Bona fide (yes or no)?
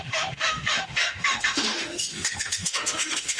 no